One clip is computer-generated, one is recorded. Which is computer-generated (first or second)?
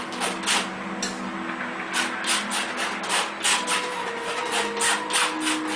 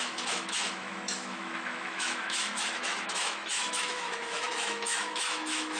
second